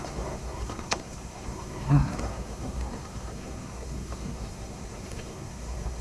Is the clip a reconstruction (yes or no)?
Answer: yes